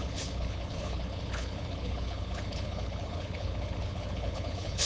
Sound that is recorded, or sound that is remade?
remade